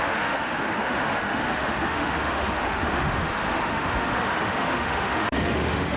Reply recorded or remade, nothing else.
remade